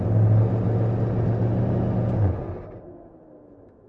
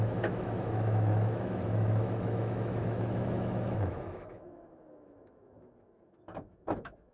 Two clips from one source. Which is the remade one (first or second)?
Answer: second